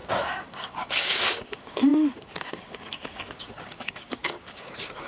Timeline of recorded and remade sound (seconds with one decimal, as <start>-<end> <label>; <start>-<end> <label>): 0.0-5.1 remade